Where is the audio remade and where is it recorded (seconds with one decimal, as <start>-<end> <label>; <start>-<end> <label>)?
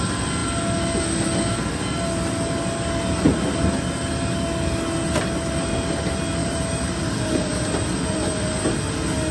0.0-6.4 recorded; 6.4-8.8 remade; 8.8-9.3 recorded